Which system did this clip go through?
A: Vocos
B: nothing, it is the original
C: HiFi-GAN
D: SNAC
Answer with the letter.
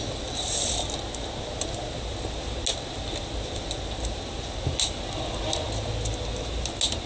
B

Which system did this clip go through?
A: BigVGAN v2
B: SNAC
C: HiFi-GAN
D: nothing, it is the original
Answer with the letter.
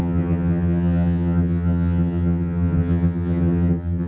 C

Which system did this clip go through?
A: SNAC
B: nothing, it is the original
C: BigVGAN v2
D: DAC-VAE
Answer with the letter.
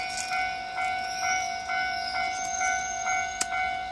B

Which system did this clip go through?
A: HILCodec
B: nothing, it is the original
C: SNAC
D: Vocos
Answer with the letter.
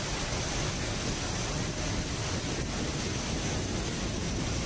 B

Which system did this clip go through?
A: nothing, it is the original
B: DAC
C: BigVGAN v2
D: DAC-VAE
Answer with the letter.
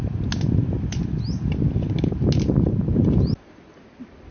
A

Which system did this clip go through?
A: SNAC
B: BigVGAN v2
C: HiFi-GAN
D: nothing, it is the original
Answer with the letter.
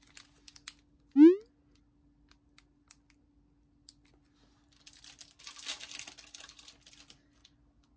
D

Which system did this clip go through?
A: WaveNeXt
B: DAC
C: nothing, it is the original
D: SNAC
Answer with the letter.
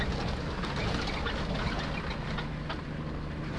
C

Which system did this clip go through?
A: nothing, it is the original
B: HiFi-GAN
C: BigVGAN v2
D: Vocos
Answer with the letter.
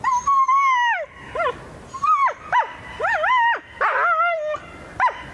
A